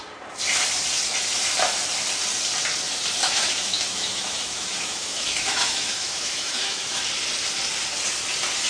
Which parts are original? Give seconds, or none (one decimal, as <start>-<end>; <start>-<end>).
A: 0.0-3.2; 7.0-8.7

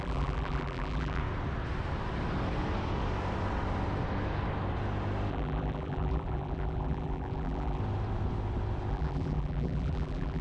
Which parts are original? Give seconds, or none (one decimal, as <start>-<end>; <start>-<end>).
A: 1.2-5.3; 7.8-8.9

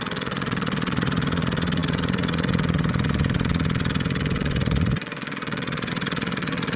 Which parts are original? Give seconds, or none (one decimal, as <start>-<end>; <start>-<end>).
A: none

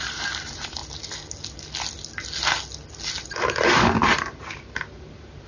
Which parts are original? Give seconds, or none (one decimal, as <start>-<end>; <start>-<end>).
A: 0.8-3.2

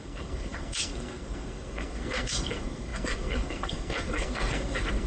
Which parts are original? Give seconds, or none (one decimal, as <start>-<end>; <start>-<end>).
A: none

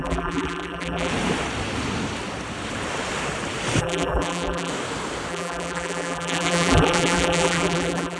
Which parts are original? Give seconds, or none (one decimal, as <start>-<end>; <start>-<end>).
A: 1.1-3.8; 4.7-5.3